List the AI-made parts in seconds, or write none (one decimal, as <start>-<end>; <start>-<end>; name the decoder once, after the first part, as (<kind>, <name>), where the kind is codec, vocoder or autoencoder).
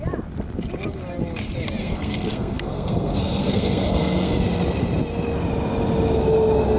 1.8-4.3 (codec, SNAC)